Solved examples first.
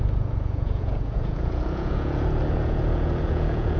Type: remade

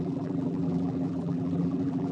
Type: remade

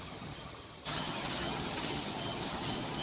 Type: remade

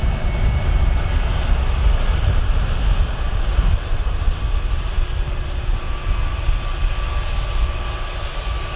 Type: recorded